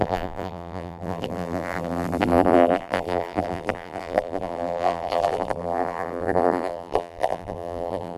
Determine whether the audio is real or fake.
fake